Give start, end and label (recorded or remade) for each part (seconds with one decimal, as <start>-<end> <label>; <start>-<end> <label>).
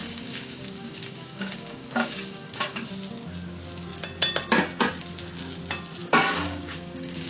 0.0-2.9 remade; 2.9-6.0 recorded; 6.0-7.3 remade